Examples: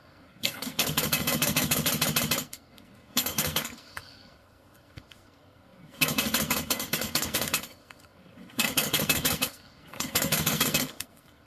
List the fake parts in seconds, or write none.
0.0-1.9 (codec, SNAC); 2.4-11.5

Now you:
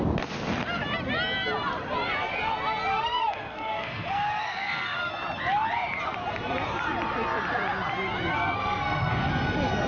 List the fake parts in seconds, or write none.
2.9-5.1 (codec, SNAC); 8.3-9.1

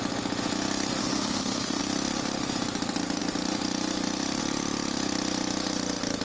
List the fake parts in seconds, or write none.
1.0-1.8 (codec, SNAC)

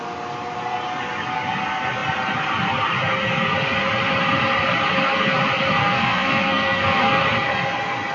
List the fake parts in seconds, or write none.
5.8-7.2 (codec, SNAC)

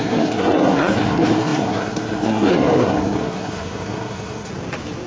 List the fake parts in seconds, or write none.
0.0-4.5 (codec, SNAC)

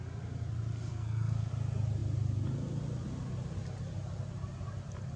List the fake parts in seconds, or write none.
0.9-1.5 (codec, SNAC)

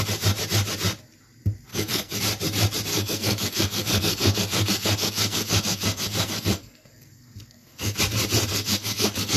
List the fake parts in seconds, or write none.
1.7-2.2 (codec, SNAC); 2.9-8.0; 8.5-9.4

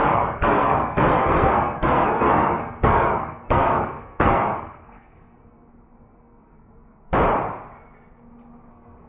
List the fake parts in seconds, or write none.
0.0-7.1 (codec, SNAC); 8.7-9.1